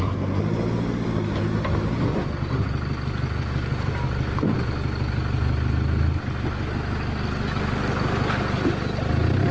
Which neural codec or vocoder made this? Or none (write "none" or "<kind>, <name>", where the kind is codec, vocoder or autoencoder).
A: none